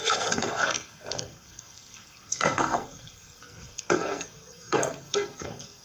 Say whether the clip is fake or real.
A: fake